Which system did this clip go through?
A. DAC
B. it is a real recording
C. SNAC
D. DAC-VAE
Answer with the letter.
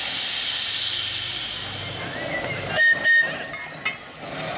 B